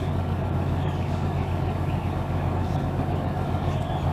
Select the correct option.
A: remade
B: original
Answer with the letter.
A